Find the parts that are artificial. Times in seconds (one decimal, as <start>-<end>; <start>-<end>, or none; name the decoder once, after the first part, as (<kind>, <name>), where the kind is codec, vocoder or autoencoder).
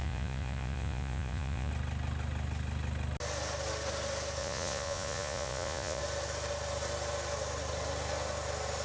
0.0-1.7 (vocoder, Vocos); 4.4-6.0